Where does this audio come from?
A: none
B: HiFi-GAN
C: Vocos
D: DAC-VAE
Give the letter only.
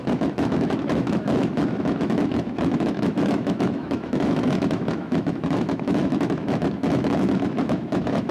D